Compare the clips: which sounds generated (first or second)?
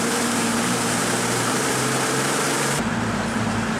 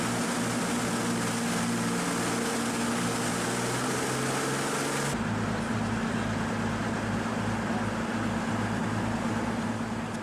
first